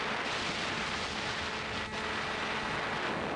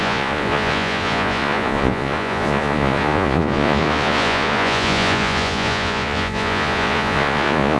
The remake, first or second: second